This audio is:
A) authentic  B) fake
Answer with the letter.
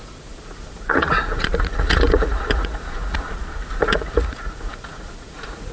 B